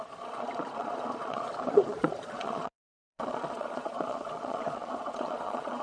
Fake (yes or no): yes